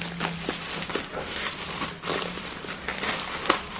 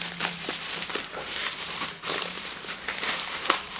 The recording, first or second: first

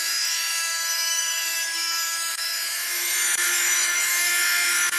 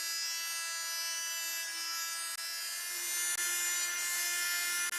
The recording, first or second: second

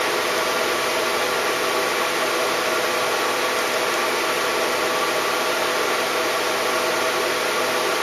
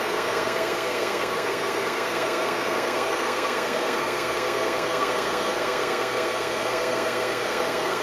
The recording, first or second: first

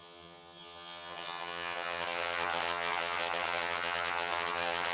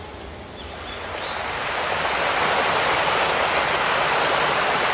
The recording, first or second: second